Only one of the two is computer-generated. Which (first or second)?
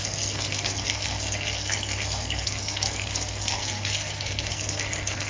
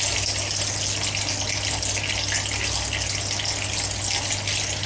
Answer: first